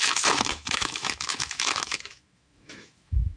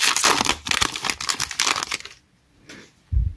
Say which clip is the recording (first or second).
second